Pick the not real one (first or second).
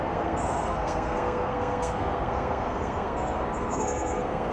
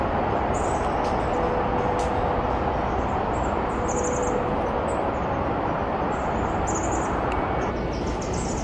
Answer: first